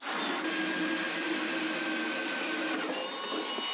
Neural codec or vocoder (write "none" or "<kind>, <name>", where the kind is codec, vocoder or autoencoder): none